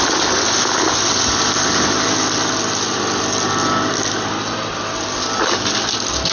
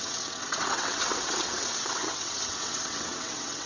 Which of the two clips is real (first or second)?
first